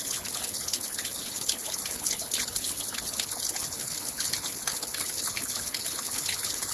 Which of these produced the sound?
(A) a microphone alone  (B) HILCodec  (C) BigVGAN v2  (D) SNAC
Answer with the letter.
B